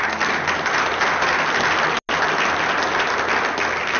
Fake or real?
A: real